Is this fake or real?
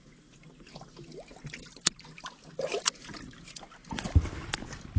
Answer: real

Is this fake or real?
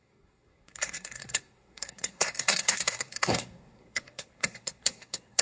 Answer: fake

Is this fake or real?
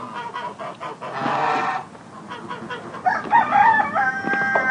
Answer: real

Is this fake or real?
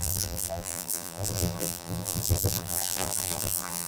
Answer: fake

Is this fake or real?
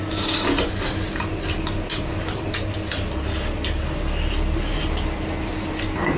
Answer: real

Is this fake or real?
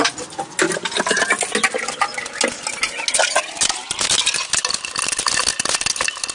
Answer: real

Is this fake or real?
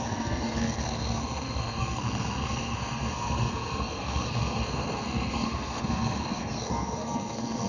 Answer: fake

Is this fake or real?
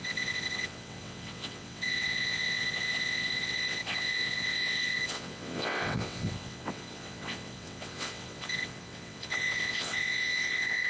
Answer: fake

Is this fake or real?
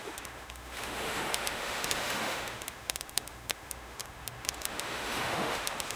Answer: fake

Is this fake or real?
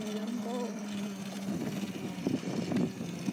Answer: real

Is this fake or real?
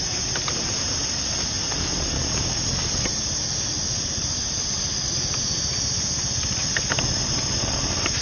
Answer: real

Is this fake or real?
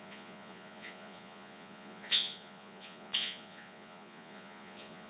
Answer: fake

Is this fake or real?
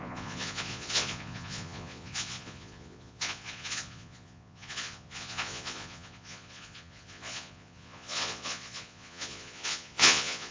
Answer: fake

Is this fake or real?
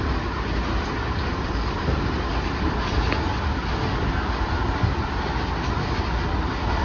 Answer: real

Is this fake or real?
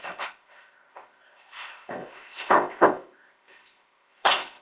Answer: fake